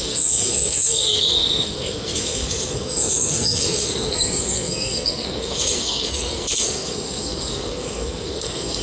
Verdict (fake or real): fake